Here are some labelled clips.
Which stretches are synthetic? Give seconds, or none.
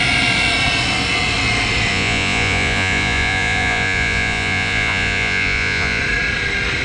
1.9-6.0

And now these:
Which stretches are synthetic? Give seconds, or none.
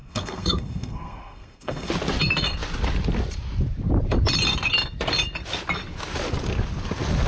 0.0-1.9